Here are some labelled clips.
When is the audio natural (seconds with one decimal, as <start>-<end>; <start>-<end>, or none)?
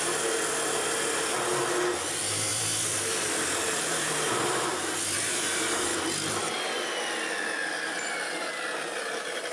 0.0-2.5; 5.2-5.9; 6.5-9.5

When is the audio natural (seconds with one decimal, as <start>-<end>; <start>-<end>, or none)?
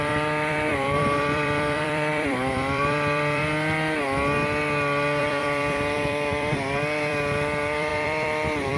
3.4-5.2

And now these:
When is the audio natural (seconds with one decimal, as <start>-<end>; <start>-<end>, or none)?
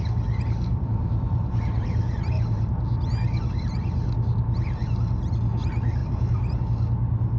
0.0-0.7; 2.7-6.0; 6.6-7.4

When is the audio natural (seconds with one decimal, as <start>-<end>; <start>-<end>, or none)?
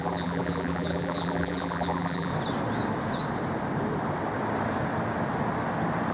2.3-6.1